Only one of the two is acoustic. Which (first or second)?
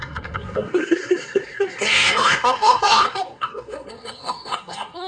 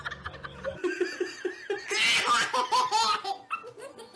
second